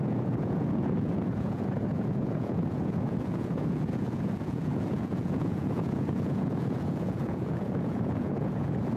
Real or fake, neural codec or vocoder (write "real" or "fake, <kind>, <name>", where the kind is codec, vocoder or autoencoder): fake, vocoder, Vocos